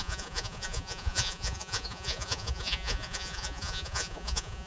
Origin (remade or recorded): remade